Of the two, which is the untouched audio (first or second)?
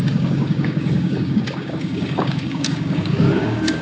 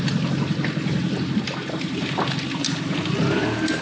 second